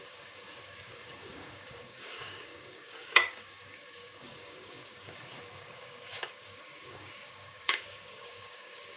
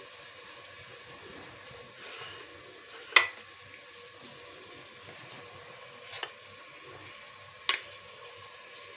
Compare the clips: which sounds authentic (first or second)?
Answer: second